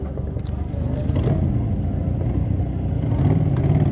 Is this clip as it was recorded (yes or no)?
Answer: yes